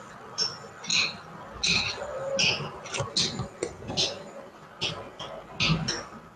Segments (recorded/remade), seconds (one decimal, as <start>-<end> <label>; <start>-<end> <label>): 0.0-6.4 recorded